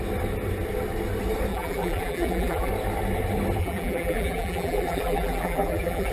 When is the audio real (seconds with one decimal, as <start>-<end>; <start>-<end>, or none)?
0.0-1.5; 2.7-3.6